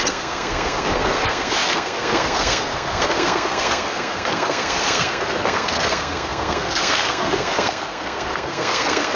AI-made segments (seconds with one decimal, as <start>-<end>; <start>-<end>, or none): 0.0-9.2